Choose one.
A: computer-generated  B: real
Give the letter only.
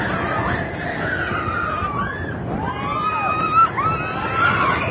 B